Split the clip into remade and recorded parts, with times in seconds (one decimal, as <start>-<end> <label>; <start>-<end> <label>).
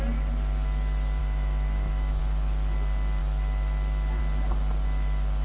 0.0-1.2 recorded; 1.2-2.2 remade; 2.2-5.4 recorded